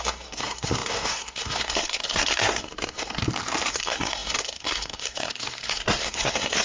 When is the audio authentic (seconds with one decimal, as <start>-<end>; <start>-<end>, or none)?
3.2-3.7